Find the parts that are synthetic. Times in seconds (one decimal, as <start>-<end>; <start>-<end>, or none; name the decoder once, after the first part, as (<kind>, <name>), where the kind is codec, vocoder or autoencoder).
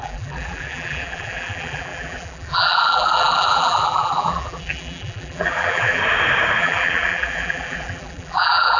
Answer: 0.0-6.0 (vocoder, BigVGAN v2); 6.6-8.8